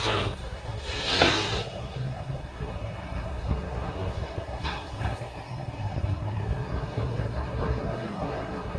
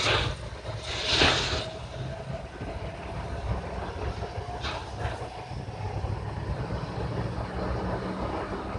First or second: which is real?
second